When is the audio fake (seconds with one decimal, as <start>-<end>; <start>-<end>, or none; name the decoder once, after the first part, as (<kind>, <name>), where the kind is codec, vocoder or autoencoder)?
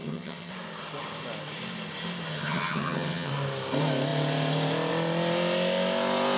0.0-0.5 (vocoder, HiFi-GAN); 2.3-3.3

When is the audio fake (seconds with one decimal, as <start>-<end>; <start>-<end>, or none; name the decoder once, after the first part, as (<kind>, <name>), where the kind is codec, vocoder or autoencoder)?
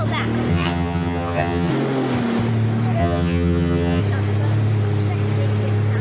0.5-1.7 (vocoder, HiFi-GAN); 3.0-4.0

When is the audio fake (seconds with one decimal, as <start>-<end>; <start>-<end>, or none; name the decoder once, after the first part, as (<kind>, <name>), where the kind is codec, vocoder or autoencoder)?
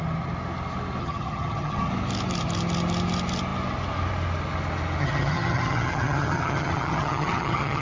1.0-1.9 (vocoder, HiFi-GAN); 5.0-7.8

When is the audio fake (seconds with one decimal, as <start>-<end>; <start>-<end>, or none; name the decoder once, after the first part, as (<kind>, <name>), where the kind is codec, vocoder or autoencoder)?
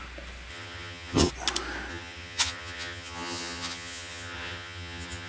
0.5-1.3 (vocoder, HiFi-GAN); 1.9-5.3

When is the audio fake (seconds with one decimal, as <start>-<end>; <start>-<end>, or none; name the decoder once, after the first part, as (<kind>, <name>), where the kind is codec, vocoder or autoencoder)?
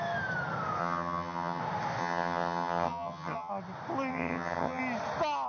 0.8-1.6 (vocoder, HiFi-GAN); 2.0-3.5; 4.1-4.8